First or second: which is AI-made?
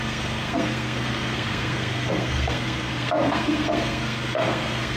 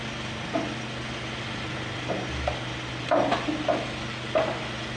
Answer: first